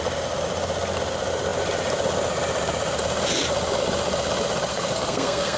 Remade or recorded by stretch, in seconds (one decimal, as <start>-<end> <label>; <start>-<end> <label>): 0.0-4.7 recorded; 4.7-5.6 remade